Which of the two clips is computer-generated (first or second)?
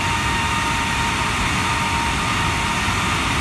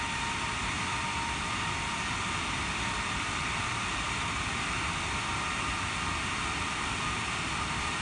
second